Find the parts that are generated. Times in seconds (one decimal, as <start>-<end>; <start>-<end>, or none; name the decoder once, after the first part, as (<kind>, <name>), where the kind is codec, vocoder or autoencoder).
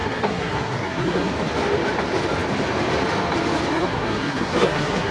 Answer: 0.0-1.3 (codec, SNAC); 3.7-5.1